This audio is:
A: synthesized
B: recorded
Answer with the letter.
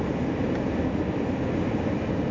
B